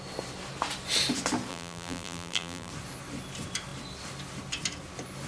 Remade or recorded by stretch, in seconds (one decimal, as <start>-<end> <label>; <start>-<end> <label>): 0.0-1.5 recorded; 1.5-2.7 remade; 2.7-5.3 recorded